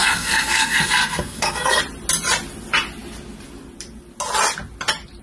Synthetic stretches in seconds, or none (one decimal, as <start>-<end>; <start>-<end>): 0.0-1.8